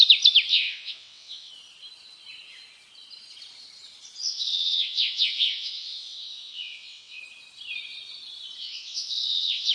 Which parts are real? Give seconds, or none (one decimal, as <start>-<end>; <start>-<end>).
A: 0.0-0.5; 1.5-4.3; 7.2-8.6